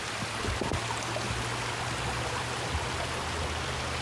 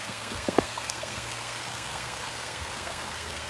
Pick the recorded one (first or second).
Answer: first